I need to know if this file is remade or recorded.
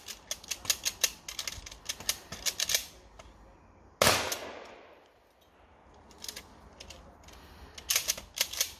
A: recorded